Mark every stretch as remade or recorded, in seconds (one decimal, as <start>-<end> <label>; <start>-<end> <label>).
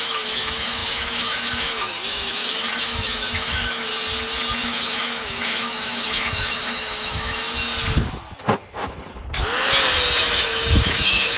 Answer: 0.0-3.9 remade; 3.9-4.6 recorded; 4.6-7.4 remade; 7.4-10.2 recorded; 10.2-11.4 remade